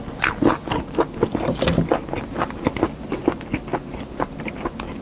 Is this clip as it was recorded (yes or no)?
yes